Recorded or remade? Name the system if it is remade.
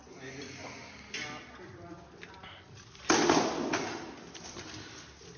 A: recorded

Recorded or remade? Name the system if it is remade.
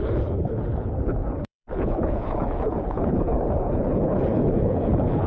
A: remade, codec, HILCodec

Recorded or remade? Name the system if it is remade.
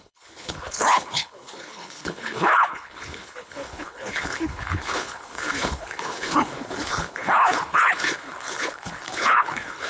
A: remade, codec, HILCodec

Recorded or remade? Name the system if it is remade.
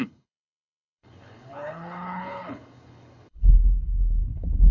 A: remade, codec, HILCodec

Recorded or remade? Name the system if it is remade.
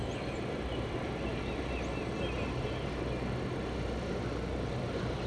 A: recorded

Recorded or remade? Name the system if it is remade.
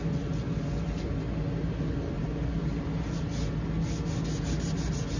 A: recorded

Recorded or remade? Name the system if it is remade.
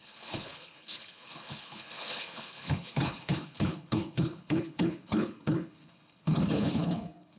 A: remade, codec, HILCodec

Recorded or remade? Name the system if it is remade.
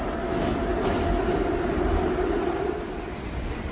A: recorded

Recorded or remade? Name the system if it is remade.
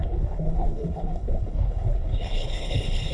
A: remade, codec, HILCodec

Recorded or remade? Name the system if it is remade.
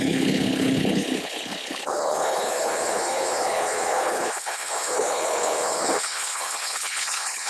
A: remade, codec, HILCodec